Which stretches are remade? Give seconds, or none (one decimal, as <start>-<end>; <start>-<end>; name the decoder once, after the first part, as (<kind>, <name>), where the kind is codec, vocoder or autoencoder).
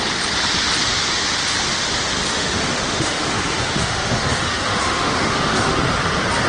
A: 2.3-5.7 (autoencoder, DAC-VAE)